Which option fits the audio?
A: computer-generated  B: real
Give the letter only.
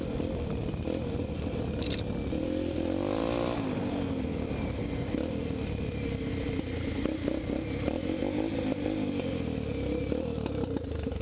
B